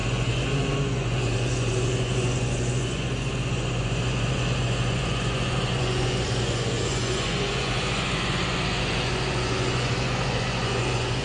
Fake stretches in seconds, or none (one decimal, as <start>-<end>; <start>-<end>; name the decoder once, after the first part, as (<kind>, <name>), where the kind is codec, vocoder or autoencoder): 0.0-11.2 (vocoder, Vocos)